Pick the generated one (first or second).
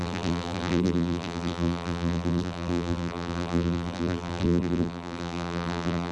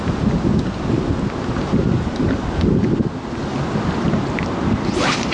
first